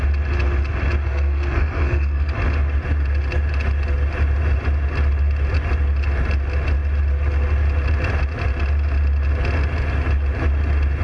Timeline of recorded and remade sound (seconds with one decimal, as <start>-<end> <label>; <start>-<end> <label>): 0.0-1.0 recorded; 1.0-2.3 remade; 2.3-11.0 recorded